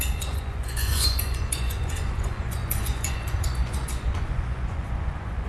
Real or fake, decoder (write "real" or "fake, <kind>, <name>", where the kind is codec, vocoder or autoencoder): fake, vocoder, Vocos